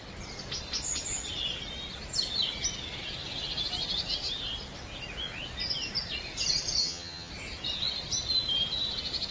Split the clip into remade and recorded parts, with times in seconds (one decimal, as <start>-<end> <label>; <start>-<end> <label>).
0.0-6.8 recorded; 6.8-7.3 remade; 7.3-9.3 recorded